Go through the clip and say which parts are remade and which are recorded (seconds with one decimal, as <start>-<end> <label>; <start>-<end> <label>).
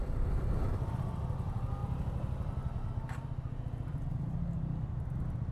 0.0-5.5 recorded